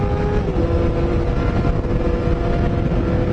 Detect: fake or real real